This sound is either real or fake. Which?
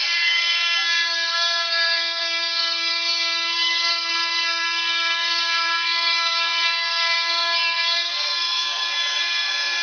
fake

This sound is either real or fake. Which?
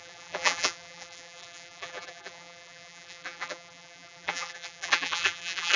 fake